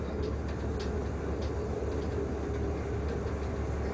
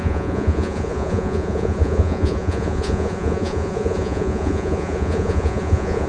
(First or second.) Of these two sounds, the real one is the first